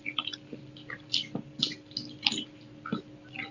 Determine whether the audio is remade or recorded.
recorded